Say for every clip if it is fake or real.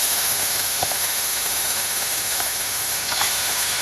fake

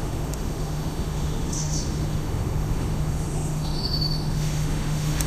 fake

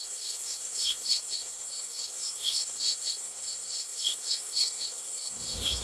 fake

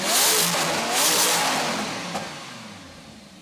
real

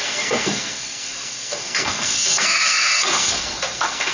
fake